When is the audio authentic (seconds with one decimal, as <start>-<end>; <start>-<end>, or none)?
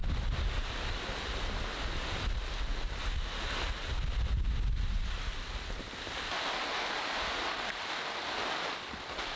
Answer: 0.0-9.4